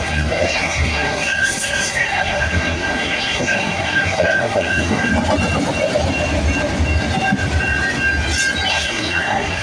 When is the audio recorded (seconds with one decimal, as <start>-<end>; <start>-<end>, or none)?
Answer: 5.1-8.7